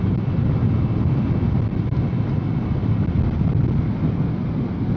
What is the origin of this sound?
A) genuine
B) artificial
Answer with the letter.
A